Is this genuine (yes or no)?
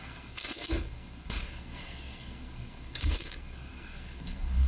no